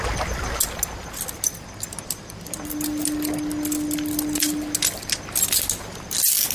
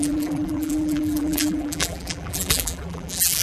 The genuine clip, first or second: first